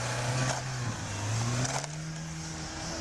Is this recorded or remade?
recorded